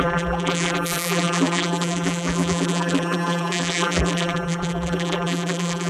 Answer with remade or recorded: remade